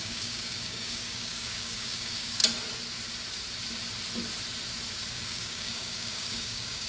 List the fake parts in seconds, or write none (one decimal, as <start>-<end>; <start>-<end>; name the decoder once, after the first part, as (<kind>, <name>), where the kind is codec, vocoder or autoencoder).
0.0-2.4 (codec, DAC); 5.1-6.9